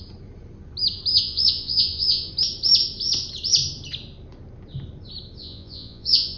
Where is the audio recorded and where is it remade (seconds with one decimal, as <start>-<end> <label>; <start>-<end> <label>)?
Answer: 0.0-1.1 recorded; 1.1-2.3 remade; 2.3-5.4 recorded; 5.4-6.4 remade